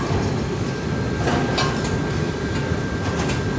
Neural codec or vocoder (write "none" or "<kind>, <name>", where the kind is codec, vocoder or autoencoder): none